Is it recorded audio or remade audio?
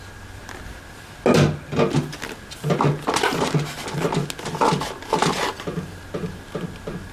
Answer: recorded